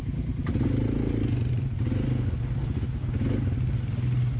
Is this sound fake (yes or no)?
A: no